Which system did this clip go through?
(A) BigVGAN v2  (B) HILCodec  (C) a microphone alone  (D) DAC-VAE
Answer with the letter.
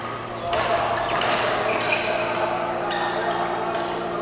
C